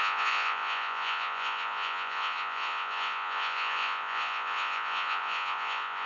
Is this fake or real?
fake